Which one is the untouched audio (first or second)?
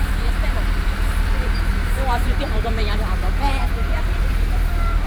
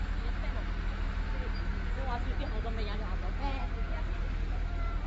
second